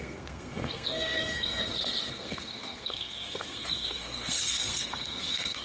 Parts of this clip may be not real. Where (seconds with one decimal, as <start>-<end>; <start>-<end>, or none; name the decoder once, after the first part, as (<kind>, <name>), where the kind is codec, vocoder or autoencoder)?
0.0-5.6 (codec, SNAC)